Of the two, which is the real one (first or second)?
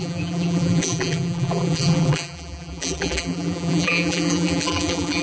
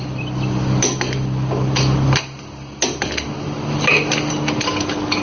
second